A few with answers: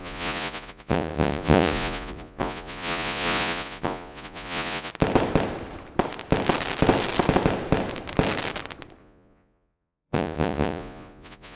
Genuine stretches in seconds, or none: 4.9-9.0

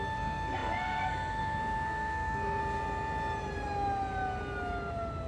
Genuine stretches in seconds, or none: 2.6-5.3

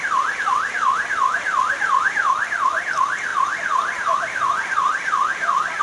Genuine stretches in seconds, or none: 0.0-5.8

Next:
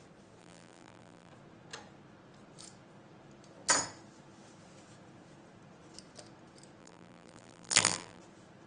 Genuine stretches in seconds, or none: 0.0-0.4; 1.3-6.8; 8.2-8.7

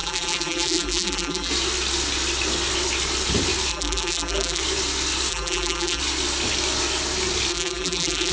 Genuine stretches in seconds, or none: 1.5-3.7; 4.6-5.3; 6.0-7.5

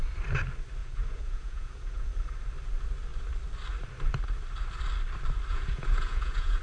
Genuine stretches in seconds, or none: 0.0-0.8; 2.1-5.5